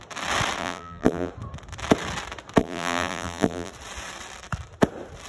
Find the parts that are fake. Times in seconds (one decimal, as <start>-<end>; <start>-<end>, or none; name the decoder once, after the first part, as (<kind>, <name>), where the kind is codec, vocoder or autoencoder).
0.6-1.3 (vocoder, BigVGAN v2); 2.6-3.7